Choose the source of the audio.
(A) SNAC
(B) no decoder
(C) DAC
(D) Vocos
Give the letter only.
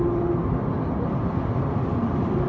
B